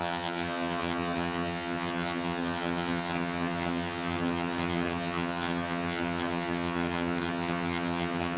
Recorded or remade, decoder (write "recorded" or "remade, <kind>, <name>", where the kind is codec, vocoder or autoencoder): remade, vocoder, HiFi-GAN